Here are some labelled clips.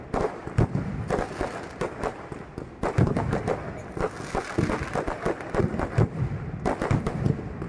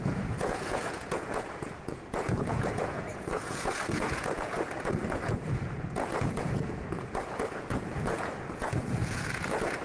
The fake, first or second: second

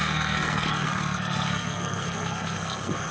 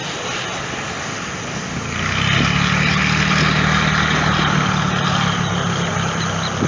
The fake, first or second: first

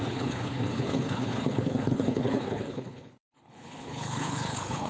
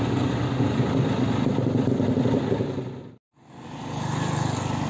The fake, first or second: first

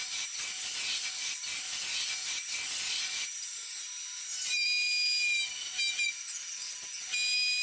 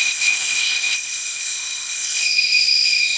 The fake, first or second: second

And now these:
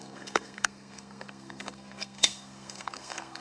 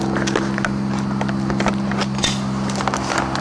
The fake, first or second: first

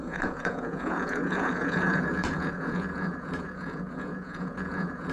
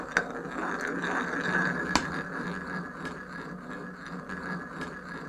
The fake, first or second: first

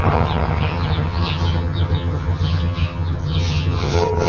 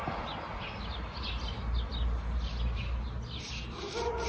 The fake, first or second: first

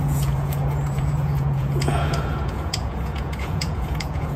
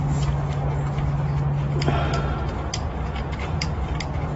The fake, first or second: first